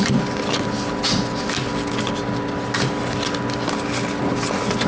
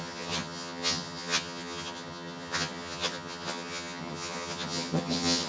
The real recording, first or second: first